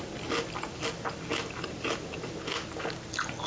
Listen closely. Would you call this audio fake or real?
real